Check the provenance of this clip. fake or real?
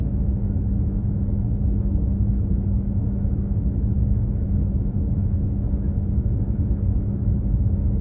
fake